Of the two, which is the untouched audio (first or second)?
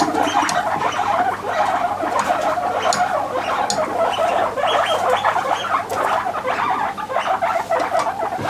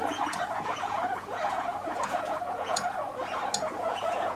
first